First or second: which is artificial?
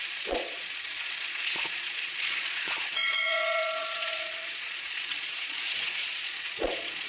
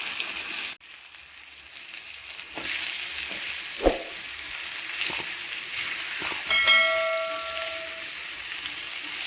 first